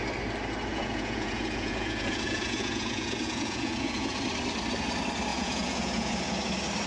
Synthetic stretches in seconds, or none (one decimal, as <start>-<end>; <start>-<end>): 0.7-4.2; 5.3-6.1